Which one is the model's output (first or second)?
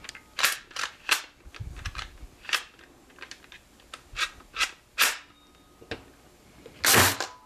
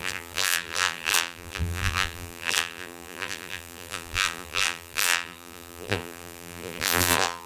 second